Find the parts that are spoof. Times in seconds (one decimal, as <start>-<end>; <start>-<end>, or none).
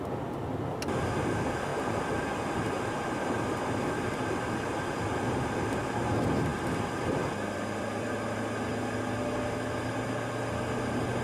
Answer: 6.5-8.1